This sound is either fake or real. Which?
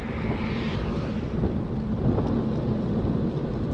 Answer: real